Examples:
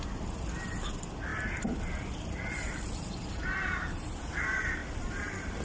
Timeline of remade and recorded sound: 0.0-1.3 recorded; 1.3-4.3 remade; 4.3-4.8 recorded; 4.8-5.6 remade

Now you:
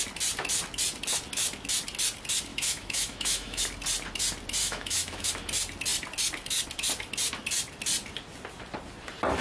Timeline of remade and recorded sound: 0.0-2.5 recorded; 2.5-3.6 remade; 3.6-4.6 recorded; 4.6-5.3 remade; 5.3-9.4 recorded

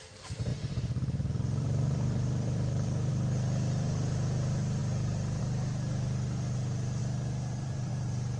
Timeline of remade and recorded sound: 0.0-0.5 recorded; 0.5-3.1 remade; 3.1-7.0 recorded; 7.0-7.9 remade; 7.9-8.4 recorded